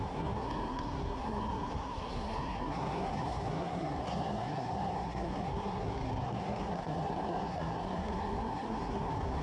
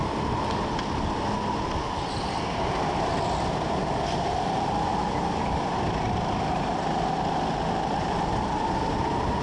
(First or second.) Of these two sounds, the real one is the second